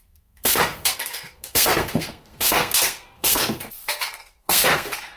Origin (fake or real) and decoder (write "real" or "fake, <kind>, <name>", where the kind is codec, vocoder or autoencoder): fake, codec, SNAC